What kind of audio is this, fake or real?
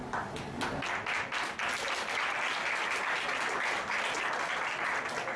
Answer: real